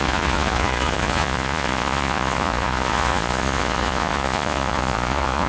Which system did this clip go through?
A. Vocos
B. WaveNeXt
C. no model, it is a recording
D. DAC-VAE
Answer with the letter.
A